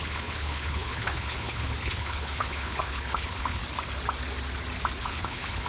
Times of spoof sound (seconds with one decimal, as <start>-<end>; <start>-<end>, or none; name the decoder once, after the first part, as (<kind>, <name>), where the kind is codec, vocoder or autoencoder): 0.0-3.6 (codec, HILCodec); 5.0-5.7